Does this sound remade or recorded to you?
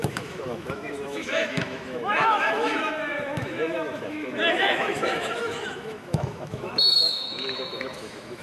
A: remade